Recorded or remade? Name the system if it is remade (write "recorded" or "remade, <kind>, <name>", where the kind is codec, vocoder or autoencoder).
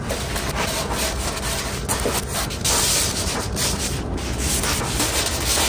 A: recorded